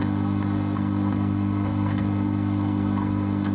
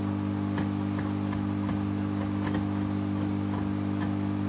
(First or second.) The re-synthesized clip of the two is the first